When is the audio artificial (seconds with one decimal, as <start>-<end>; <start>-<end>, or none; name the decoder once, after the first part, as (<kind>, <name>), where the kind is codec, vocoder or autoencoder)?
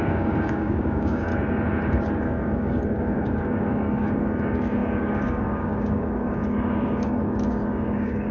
0.0-1.3 (codec, DAC); 2.2-8.3